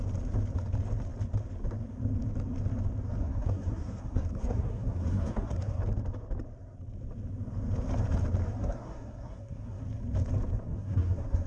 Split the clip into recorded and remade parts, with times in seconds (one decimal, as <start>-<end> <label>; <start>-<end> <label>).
0.0-3.2 recorded; 3.2-5.8 remade; 5.8-8.6 recorded; 8.6-9.8 remade; 9.8-10.6 recorded; 10.6-11.5 remade